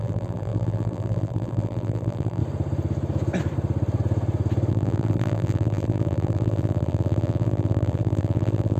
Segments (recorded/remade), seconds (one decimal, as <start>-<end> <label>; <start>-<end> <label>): 0.0-2.4 remade; 2.4-4.7 recorded; 4.7-8.8 remade